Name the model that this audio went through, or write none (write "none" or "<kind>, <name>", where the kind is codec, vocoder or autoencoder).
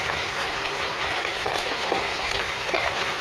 codec, SNAC